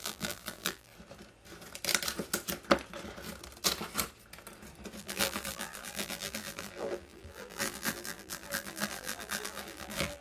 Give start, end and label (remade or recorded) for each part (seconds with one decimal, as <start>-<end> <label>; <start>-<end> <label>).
0.0-0.9 remade; 0.9-5.0 recorded; 5.0-10.2 remade